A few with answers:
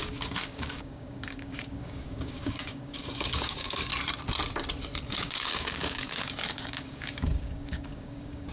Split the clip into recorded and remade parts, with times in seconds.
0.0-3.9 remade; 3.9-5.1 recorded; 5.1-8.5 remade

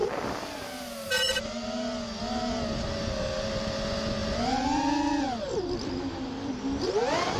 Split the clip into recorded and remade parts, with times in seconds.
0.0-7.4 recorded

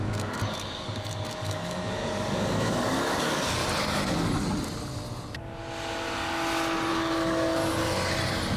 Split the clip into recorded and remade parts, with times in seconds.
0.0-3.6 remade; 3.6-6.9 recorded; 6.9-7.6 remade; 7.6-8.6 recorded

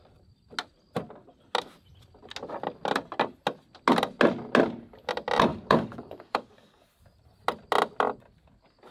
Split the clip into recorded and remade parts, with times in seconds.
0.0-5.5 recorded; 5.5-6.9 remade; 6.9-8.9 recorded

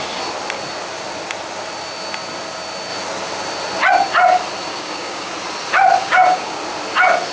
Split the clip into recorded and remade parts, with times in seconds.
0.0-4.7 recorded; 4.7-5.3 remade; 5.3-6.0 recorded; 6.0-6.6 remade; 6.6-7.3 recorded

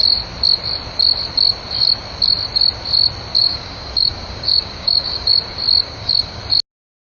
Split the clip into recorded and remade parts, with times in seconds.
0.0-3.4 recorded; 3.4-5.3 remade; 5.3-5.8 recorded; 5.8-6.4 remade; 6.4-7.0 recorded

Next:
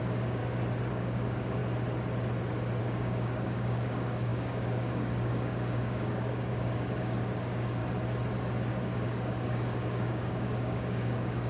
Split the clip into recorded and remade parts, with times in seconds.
0.0-0.4 remade; 0.4-0.9 recorded; 0.9-1.6 remade; 1.6-2.8 recorded; 2.8-7.8 remade; 7.8-8.8 recorded; 8.8-11.5 remade

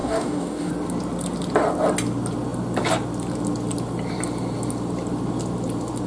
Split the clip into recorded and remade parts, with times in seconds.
0.0-0.7 remade; 0.7-6.1 recorded